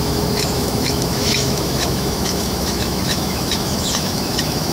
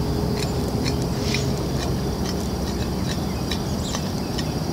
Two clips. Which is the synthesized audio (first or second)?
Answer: first